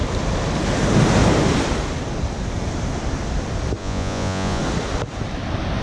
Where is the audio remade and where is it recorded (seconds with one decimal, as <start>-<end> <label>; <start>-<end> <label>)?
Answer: 0.0-3.8 recorded; 3.8-4.6 remade; 4.6-5.8 recorded